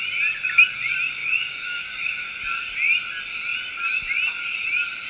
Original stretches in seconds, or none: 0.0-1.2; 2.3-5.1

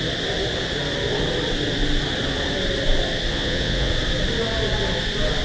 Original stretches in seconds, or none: 0.0-3.3; 3.9-5.4

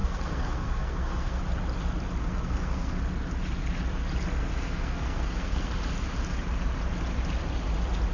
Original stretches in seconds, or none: 1.4-2.2; 2.9-4.4; 5.7-8.1

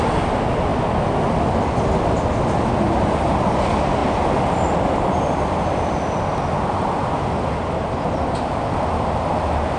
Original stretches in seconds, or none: 0.0-9.8